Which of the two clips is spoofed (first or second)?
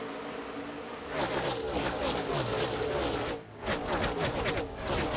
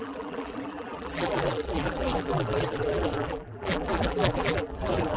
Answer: second